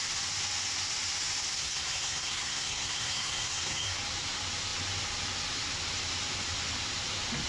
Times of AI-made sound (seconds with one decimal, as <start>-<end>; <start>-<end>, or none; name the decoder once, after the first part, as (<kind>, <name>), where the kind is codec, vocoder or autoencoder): 1.5-4.0 (codec, SNAC)